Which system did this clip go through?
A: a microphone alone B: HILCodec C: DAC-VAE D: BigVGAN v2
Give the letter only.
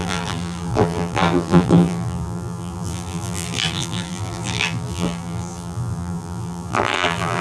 D